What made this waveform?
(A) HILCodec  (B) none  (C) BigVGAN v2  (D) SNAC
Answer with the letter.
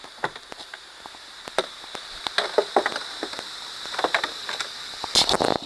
B